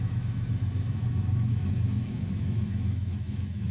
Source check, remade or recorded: remade